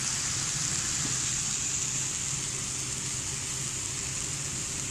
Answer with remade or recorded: recorded